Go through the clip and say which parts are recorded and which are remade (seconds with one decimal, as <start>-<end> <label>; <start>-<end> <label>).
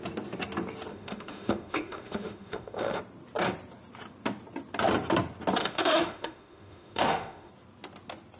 0.0-0.9 recorded; 0.9-3.0 remade; 3.0-5.6 recorded; 5.6-7.5 remade; 7.5-8.4 recorded